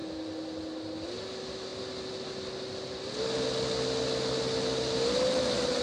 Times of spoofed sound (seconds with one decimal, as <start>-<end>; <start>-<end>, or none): none